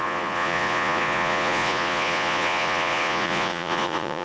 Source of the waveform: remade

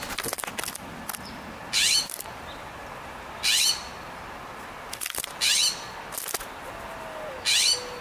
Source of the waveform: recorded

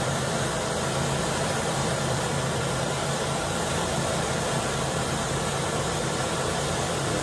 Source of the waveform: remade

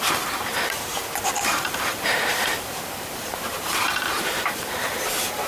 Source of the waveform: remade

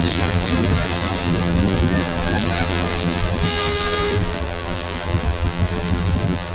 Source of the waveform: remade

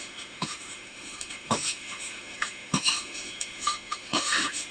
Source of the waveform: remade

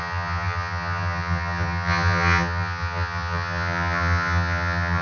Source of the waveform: remade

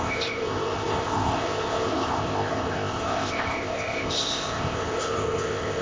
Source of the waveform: remade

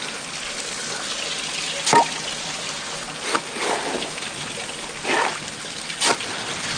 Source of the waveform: recorded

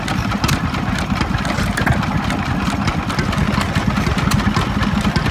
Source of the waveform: recorded